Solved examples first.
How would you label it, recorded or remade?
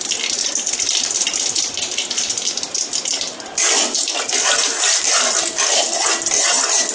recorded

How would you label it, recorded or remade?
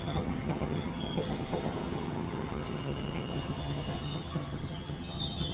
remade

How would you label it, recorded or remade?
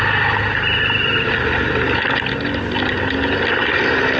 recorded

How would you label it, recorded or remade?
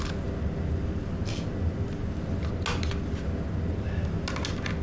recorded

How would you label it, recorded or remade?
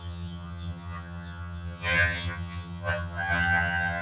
remade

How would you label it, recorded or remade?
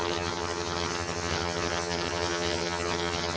remade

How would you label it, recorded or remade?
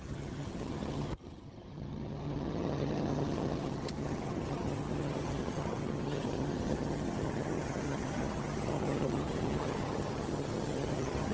remade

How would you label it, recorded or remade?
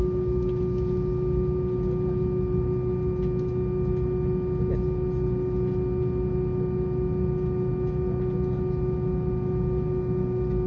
recorded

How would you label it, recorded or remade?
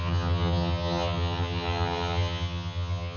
remade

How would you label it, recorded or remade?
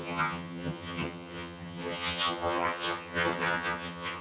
remade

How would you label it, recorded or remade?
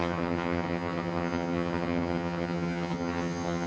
remade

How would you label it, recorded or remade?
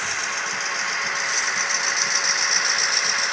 recorded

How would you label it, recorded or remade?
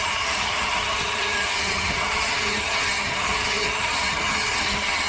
remade